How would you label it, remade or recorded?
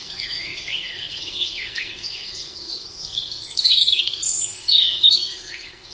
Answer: remade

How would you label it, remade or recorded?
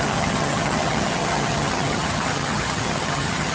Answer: remade